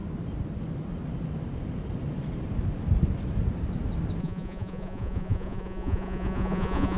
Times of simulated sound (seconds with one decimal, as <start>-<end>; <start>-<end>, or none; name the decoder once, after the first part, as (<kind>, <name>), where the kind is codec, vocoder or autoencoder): 4.2-7.0 (vocoder, Vocos)